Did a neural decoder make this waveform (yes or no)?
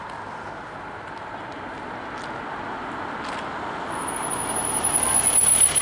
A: no